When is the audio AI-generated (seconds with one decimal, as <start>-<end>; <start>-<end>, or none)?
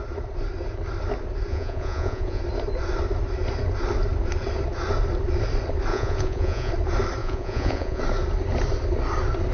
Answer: 1.5-2.4; 5.9-6.7; 7.2-8.0